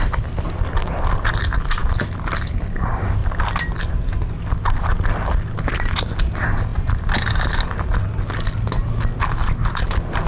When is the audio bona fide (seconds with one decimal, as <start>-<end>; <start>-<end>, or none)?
0.0-10.3

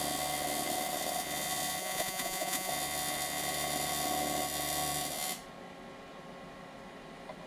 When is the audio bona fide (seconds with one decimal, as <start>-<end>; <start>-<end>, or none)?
0.0-1.8; 2.7-7.5

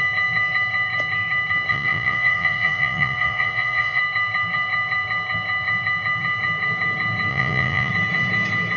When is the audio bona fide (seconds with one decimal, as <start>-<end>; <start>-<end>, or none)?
0.0-1.7; 4.0-7.3; 7.9-8.8

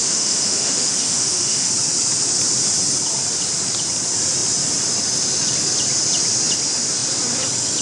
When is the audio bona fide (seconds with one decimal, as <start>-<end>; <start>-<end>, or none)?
1.7-7.8

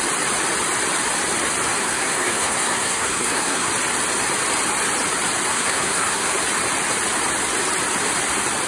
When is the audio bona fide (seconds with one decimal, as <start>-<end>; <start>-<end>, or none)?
0.0-1.8; 3.7-5.5; 6.3-8.7